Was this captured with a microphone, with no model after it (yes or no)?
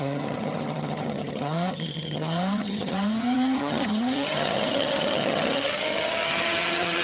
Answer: no